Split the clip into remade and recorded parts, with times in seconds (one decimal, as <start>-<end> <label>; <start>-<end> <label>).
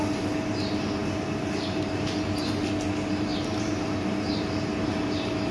0.0-5.5 recorded